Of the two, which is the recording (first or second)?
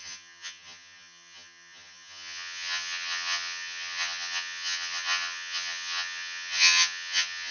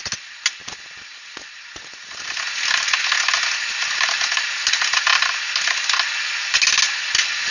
second